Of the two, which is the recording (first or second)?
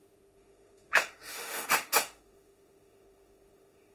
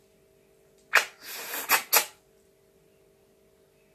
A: second